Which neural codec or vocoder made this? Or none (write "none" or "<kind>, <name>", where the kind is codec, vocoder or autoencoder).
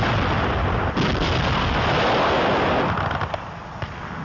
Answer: none